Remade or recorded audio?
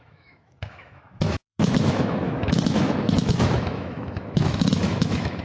remade